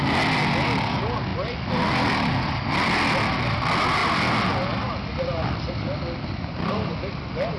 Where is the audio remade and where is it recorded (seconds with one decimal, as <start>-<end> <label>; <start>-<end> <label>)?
0.0-7.6 recorded